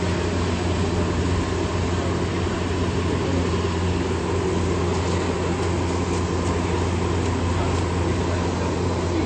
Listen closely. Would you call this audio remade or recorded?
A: recorded